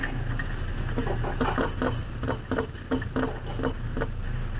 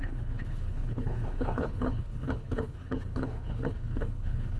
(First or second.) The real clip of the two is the first